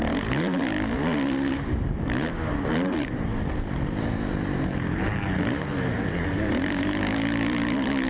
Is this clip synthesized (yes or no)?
yes